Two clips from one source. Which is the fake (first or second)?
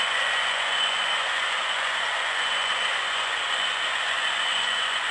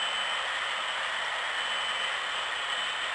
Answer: first